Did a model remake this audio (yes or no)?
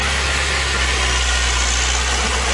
no